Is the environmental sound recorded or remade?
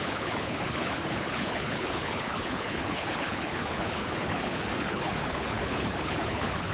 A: remade